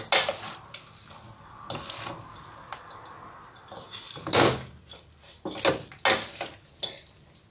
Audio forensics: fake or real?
real